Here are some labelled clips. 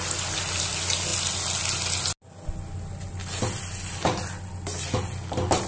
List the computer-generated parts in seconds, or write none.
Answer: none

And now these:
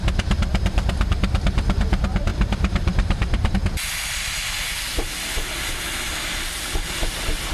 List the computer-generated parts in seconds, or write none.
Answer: 2.3-3.5

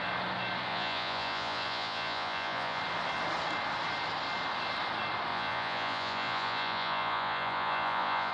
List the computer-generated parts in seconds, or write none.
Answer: 0.7-2.8; 5.3-8.3

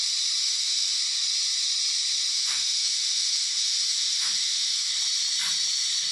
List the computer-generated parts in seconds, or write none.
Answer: 0.4-1.0; 2.3-4.9

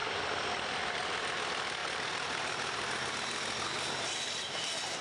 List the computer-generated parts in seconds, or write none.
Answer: 1.8-3.1

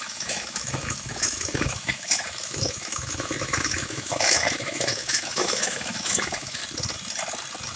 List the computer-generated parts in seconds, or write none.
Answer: 0.0-6.6